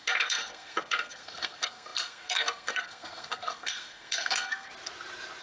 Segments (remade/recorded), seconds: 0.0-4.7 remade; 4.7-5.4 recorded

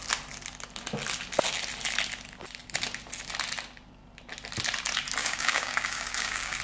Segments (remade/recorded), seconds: 0.0-5.2 recorded; 5.2-6.6 remade

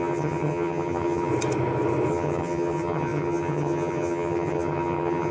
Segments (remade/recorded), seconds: 0.0-1.3 remade; 1.3-2.1 recorded; 2.1-5.3 remade

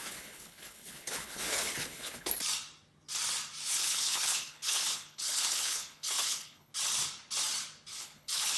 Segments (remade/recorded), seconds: 0.0-2.3 remade; 2.3-3.7 recorded; 3.7-6.7 remade; 6.7-7.9 recorded; 7.9-8.6 remade

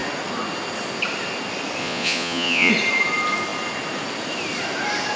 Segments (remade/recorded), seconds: 0.0-1.8 recorded; 1.8-2.7 remade; 2.7-5.2 recorded

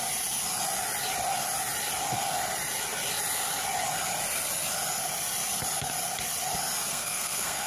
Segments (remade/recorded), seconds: 0.0-6.9 recorded; 6.9-7.7 remade

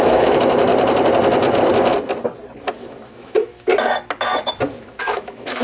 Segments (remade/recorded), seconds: 0.0-0.7 remade; 0.7-2.8 recorded; 2.8-3.7 remade; 3.7-4.8 recorded; 4.8-5.6 remade